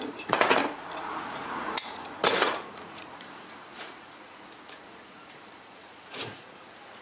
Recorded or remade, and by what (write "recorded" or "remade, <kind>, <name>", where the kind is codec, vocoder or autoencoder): remade, vocoder, Vocos